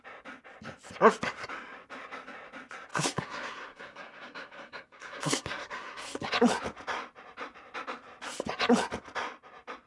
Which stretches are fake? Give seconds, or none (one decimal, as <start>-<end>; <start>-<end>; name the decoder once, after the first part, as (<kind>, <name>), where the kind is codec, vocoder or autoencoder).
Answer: 2.9-6.3 (codec, SNAC)